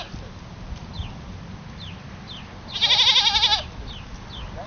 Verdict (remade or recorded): recorded